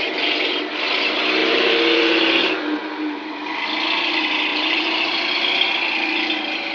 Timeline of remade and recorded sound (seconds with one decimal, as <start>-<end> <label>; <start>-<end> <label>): 0.0-1.4 recorded; 1.4-2.4 remade; 2.4-4.5 recorded; 4.5-5.2 remade; 5.2-6.7 recorded